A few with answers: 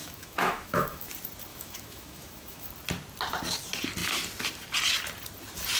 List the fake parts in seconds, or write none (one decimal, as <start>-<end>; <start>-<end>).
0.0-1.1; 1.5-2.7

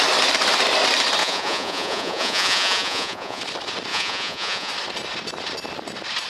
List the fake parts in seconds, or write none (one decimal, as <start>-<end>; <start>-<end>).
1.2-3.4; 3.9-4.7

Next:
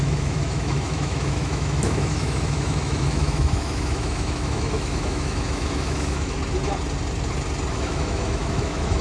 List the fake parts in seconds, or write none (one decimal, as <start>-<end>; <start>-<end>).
0.0-6.4; 7.7-9.0

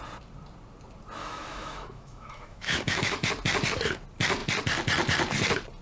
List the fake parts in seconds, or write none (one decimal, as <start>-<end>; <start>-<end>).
1.2-3.3